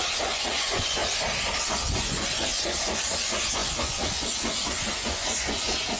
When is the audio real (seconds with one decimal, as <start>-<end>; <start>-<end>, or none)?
1.0-1.6